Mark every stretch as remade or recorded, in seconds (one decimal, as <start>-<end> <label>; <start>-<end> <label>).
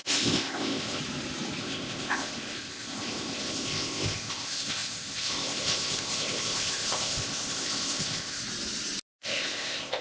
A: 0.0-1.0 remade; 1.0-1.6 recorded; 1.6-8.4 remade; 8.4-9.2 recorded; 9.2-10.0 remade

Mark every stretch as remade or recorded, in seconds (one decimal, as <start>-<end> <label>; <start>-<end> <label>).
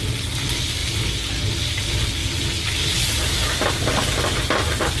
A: 0.0-5.0 recorded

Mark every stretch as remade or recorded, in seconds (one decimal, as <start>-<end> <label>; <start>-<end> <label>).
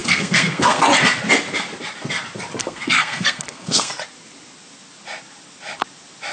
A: 0.0-0.8 remade; 0.8-2.6 recorded; 2.6-3.9 remade; 3.9-6.3 recorded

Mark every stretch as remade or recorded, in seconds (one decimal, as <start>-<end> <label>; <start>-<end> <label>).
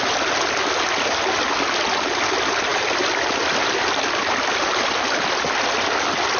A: 0.0-6.4 recorded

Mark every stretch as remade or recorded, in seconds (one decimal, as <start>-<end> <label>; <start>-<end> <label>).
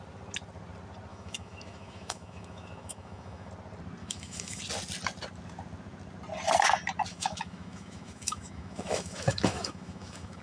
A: 0.0-1.1 recorded; 1.1-3.5 remade; 3.5-4.0 recorded; 4.0-4.6 remade; 4.6-7.1 recorded; 7.1-10.4 remade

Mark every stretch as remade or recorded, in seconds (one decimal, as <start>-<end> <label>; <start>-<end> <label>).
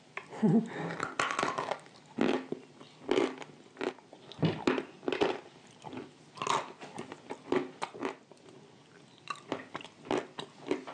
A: 0.0-10.9 recorded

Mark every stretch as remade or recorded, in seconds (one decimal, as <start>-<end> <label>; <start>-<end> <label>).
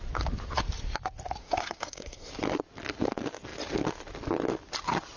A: 0.0-1.4 recorded; 1.4-2.3 remade; 2.3-5.2 recorded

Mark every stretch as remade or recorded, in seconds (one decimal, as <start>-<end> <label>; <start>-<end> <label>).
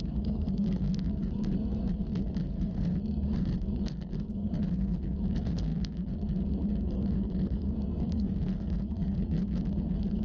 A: 0.0-10.2 remade